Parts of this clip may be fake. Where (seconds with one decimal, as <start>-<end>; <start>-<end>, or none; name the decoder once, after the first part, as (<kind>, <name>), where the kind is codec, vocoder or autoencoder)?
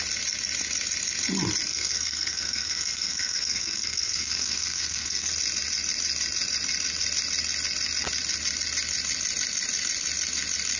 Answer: 1.7-5.3 (codec, SNAC)